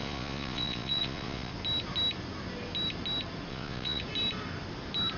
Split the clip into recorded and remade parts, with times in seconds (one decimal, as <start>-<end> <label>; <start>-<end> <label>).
0.0-1.5 remade; 1.5-3.5 recorded; 3.5-4.0 remade; 4.0-5.2 recorded